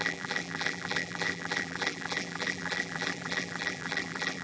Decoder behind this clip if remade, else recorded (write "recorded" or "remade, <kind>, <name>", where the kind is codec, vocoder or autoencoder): remade, vocoder, BigVGAN v2